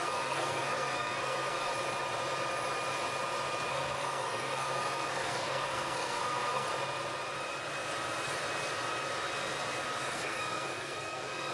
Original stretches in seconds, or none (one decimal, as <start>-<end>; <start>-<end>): 1.7-3.7; 6.7-10.0